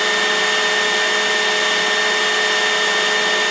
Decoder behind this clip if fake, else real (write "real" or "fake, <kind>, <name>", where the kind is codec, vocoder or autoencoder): real